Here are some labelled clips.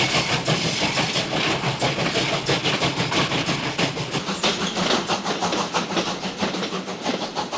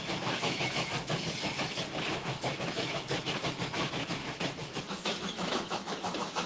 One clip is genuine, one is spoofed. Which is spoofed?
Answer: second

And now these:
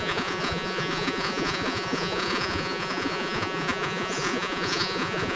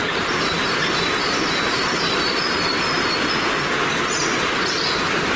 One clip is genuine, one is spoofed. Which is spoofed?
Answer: first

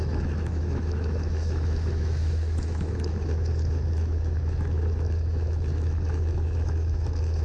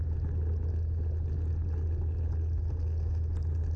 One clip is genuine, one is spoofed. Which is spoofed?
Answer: first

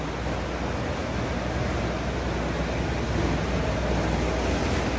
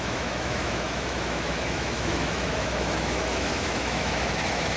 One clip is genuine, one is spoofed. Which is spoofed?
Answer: second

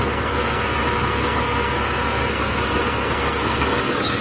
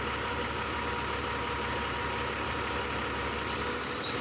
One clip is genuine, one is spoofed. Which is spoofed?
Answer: first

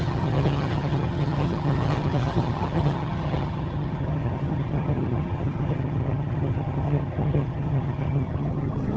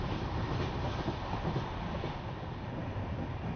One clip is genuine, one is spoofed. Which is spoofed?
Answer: first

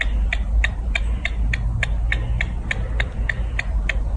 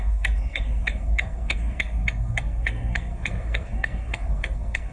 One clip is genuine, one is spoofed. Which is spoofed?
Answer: second